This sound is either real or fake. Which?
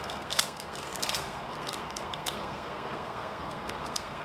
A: fake